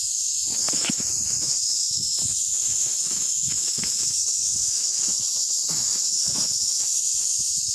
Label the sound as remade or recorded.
remade